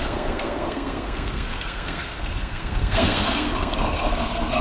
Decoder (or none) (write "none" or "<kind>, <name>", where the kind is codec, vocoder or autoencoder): codec, SNAC